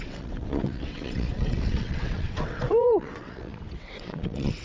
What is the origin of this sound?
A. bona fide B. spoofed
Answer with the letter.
B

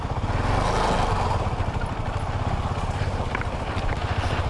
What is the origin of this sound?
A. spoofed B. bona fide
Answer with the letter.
B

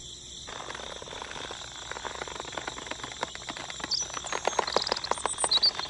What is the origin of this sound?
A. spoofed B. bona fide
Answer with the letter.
B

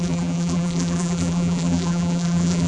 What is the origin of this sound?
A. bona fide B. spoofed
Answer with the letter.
B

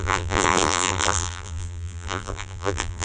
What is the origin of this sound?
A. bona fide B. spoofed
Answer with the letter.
B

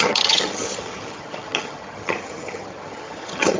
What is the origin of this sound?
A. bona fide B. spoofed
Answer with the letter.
B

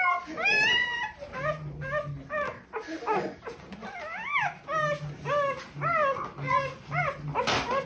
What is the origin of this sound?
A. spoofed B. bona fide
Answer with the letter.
B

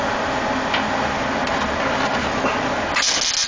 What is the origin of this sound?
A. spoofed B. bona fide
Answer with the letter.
B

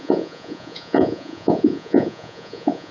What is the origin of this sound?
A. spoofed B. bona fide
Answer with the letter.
A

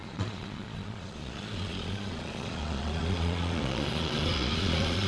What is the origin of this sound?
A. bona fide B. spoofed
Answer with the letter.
B